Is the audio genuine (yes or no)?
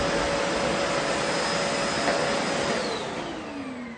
yes